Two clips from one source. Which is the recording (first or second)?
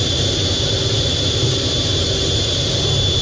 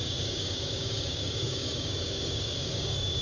first